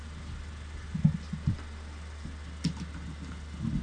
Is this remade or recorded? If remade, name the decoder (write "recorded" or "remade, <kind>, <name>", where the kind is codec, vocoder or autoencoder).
recorded